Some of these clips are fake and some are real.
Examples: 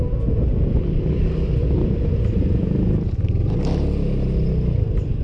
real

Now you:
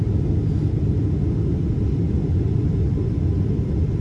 real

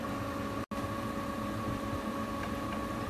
real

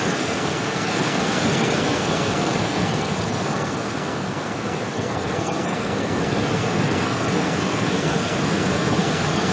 fake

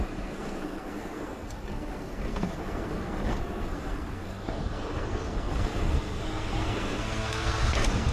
fake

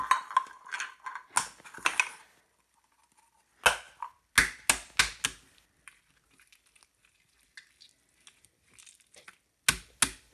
real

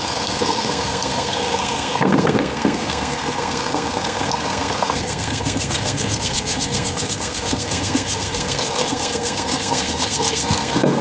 fake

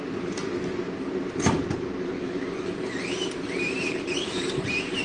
real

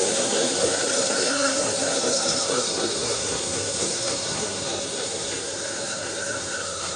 fake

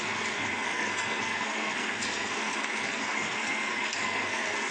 fake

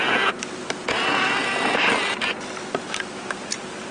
real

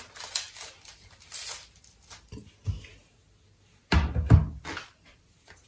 real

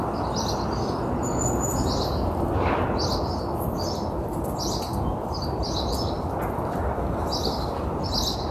real